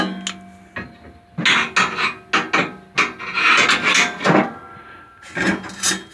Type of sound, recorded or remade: recorded